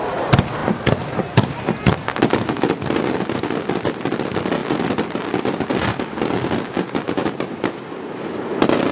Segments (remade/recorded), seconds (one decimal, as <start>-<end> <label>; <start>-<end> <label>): 0.0-4.6 recorded; 4.6-5.4 remade; 5.4-7.2 recorded; 7.2-8.1 remade; 8.1-8.9 recorded